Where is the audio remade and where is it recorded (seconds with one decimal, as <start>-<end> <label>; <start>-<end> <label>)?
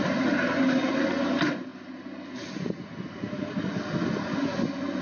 0.0-5.0 recorded